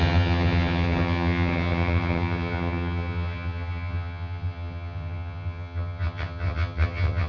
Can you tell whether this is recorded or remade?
remade